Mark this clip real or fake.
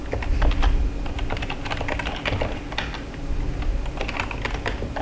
real